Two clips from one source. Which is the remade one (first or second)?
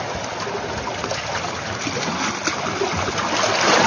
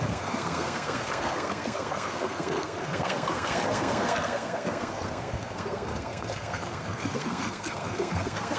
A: second